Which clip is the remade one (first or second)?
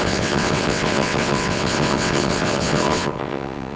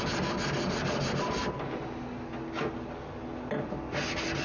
first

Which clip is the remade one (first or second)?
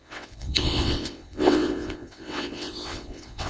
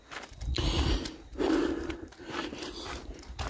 first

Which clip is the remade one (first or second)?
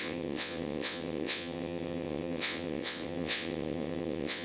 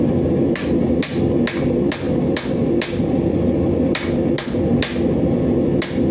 first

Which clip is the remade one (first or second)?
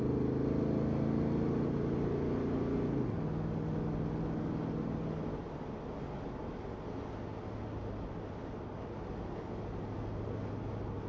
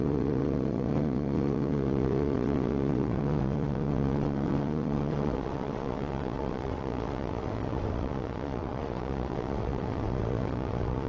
second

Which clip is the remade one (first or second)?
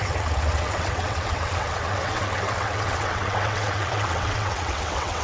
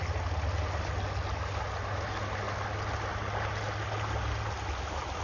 first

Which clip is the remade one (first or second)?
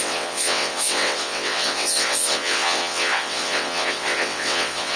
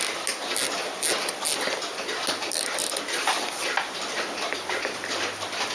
first